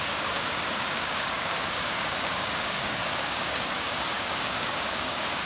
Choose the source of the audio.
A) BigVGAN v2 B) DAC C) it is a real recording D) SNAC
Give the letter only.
B